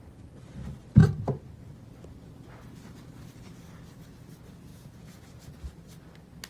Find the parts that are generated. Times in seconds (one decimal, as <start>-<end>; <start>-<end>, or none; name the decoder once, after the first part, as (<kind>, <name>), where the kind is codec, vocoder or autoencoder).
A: 4.7-5.6 (vocoder, Vocos)